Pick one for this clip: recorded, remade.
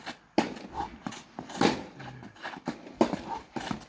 recorded